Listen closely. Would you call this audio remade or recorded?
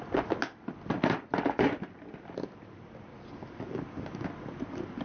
recorded